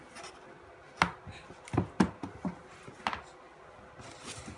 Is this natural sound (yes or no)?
yes